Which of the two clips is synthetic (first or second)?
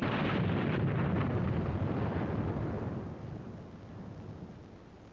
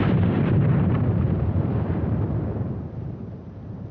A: second